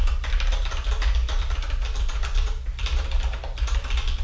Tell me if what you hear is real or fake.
real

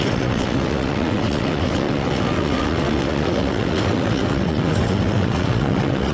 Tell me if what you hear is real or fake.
fake